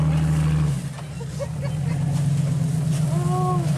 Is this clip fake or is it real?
real